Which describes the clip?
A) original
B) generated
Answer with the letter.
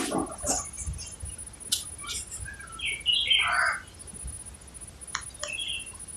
A